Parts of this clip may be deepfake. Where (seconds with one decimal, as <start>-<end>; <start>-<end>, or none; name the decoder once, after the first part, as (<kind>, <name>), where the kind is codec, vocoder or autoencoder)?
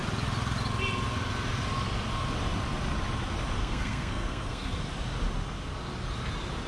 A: 3.6-4.8 (codec, SNAC)